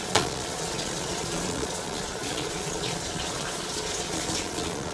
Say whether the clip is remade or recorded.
remade